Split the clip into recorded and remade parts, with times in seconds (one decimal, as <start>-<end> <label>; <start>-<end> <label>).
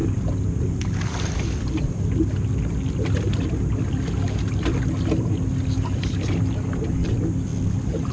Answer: 0.0-8.1 recorded